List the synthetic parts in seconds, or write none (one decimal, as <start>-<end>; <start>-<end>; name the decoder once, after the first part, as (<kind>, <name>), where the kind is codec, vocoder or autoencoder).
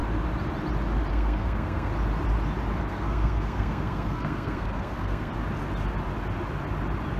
1.1-1.9 (codec, SNAC); 2.8-5.3